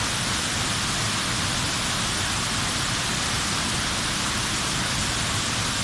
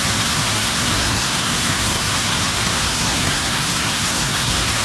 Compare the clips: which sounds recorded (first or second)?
first